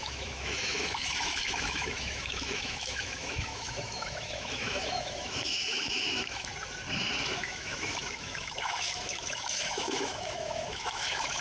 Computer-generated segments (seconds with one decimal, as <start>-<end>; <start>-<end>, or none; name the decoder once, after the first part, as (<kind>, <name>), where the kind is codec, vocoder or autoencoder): 0.0-6.5 (autoencoder, DAC-VAE); 7.2-11.4